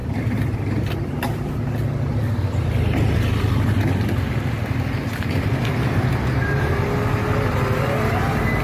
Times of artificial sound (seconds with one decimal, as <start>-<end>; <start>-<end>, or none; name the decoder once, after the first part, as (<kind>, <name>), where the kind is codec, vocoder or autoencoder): 0.0-1.5 (vocoder, BigVGAN v2)